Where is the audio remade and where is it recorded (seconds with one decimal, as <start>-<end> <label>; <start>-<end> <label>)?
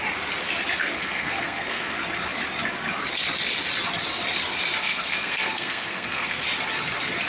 0.0-0.8 recorded; 0.8-1.9 remade; 1.9-4.8 recorded; 4.8-6.4 remade; 6.4-7.3 recorded